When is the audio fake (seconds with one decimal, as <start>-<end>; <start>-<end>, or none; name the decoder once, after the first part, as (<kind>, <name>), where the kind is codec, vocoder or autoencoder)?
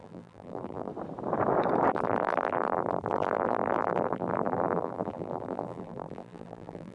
0.0-0.9 (vocoder, BigVGAN v2); 1.9-6.9